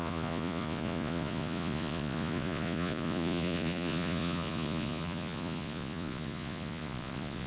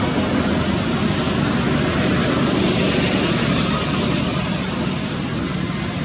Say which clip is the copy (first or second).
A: first